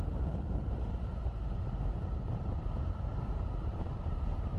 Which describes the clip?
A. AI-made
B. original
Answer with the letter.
A